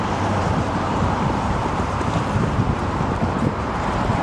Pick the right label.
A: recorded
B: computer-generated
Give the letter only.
B